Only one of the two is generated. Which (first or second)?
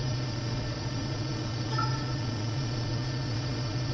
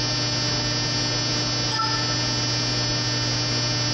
first